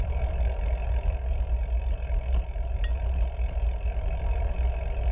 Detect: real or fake real